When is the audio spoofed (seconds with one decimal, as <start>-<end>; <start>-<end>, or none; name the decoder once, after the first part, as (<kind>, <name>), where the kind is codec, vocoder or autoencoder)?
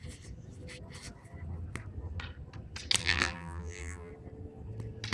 3.0-4.1 (vocoder, BigVGAN v2)